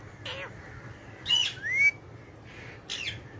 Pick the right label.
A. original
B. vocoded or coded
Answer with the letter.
A